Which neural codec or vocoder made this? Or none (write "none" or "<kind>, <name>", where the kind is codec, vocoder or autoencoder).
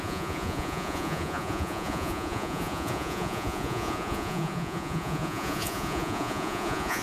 vocoder, Vocos